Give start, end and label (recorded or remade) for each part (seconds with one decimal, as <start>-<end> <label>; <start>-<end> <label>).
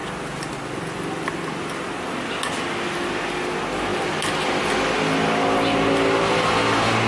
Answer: 0.0-7.1 recorded